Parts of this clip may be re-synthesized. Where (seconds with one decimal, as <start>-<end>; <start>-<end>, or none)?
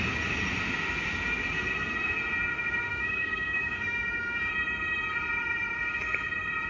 2.9-4.5